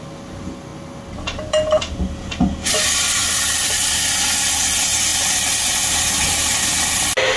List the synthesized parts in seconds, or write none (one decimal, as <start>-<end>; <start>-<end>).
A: 3.2-4.1